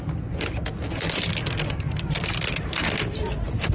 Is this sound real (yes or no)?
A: yes